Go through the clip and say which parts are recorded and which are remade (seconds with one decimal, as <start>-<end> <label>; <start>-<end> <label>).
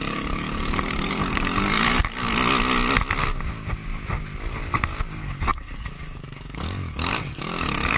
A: 0.0-2.3 remade; 2.3-5.0 recorded; 5.0-8.0 remade